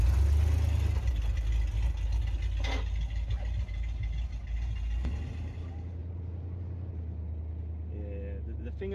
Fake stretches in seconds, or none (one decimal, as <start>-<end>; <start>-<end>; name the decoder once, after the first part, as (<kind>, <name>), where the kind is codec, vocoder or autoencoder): none